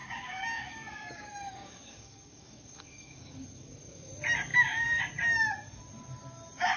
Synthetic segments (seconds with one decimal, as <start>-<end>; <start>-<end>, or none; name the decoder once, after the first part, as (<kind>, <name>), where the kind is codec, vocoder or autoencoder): 0.0-4.1 (codec, DAC); 4.5-5.0